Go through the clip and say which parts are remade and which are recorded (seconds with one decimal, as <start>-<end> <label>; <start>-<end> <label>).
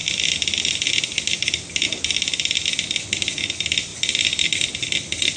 0.0-5.4 recorded